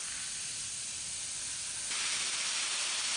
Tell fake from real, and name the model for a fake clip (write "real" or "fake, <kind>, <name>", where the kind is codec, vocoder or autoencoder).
real